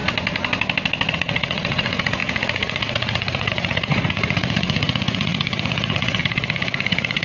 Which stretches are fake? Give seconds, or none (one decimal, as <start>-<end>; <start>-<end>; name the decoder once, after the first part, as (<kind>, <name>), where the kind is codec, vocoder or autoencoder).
1.1-7.2 (vocoder, Vocos)

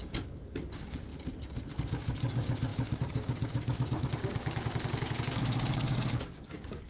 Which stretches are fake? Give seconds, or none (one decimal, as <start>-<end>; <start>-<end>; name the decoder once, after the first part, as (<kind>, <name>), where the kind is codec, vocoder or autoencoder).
0.0-1.1 (codec, DAC); 1.9-6.9

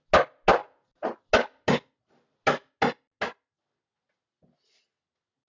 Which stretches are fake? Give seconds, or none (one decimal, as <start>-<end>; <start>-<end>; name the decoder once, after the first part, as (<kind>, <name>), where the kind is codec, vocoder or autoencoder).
none

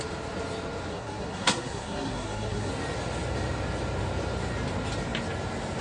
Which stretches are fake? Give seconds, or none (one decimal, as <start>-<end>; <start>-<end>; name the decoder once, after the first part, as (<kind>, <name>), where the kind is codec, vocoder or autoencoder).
0.9-2.7 (codec, SNAC)

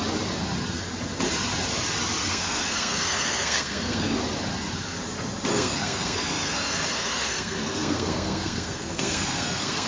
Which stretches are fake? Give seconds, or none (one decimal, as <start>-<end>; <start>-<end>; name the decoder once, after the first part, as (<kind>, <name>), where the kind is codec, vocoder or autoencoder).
2.2-4.2 (codec, SNAC); 5.5-9.9